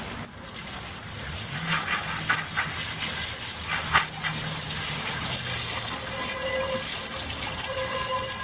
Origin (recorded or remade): recorded